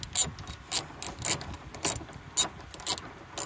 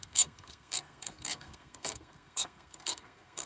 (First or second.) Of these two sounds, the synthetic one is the second